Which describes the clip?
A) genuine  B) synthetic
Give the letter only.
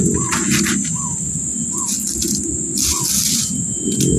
A